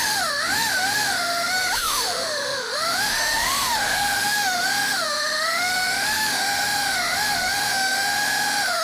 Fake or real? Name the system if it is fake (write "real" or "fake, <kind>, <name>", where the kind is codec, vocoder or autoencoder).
fake, autoencoder, DAC-VAE